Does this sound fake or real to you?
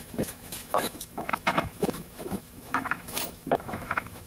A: fake